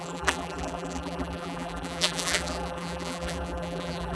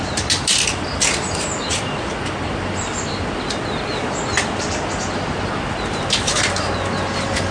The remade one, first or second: first